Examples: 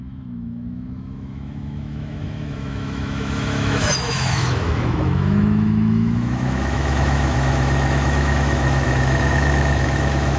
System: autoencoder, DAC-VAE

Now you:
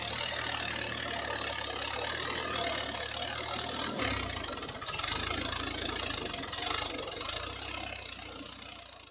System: none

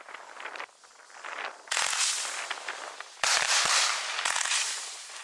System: none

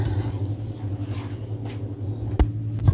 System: none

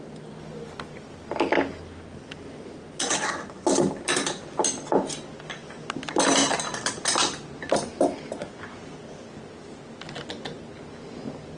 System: none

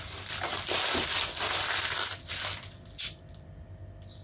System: none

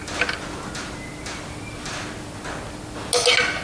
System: none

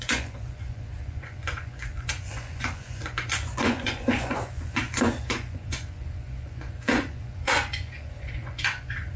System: vocoder, Vocos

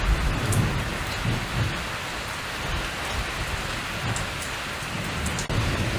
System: none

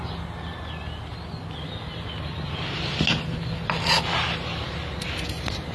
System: none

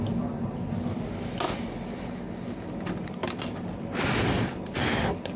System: none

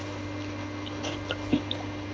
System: none